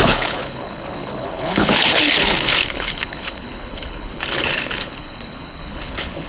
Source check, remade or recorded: remade